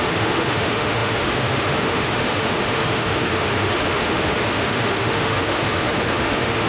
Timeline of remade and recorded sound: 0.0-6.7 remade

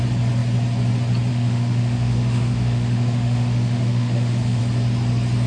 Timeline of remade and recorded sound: 0.0-1.3 recorded; 1.3-4.6 remade; 4.6-5.5 recorded

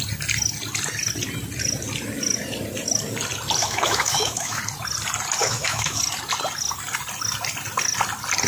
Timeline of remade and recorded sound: 0.0-3.6 recorded; 3.6-4.6 remade; 4.6-5.4 recorded; 5.4-6.0 remade; 6.0-8.5 recorded

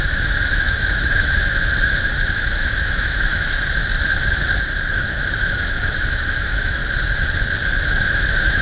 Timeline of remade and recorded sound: 0.0-3.8 remade; 3.8-4.9 recorded; 4.9-6.8 remade; 6.8-7.8 recorded; 7.8-8.6 remade

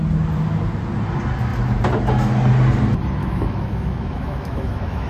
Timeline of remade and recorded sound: 0.0-3.2 recorded; 3.2-5.1 remade

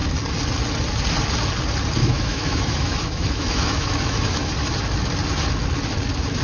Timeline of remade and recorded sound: 0.0-2.0 recorded; 2.0-4.5 remade; 4.5-6.4 recorded

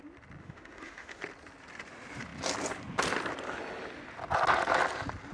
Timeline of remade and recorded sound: 0.0-0.4 recorded; 0.4-1.2 remade; 1.2-5.3 recorded